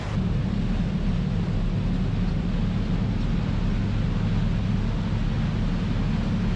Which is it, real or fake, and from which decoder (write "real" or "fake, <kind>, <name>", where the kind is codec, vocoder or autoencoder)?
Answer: real